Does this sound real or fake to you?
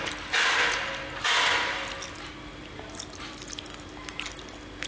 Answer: real